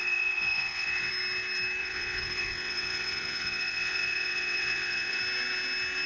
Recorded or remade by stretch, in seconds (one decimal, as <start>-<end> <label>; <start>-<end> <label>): 0.0-1.1 remade; 1.1-1.8 recorded; 1.8-5.2 remade; 5.2-6.1 recorded